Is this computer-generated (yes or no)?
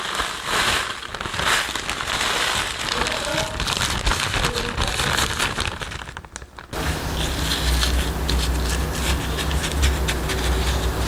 no